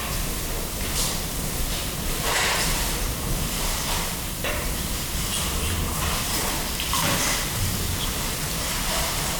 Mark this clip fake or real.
fake